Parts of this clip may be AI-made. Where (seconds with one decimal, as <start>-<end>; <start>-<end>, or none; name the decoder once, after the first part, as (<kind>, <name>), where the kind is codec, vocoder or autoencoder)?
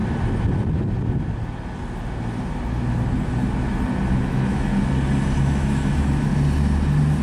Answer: 4.2-4.7 (autoencoder, DAC-VAE); 5.4-6.3